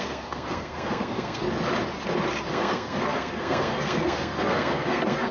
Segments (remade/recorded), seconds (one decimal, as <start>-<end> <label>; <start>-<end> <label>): 0.0-1.4 remade; 1.4-2.5 recorded; 2.5-5.3 remade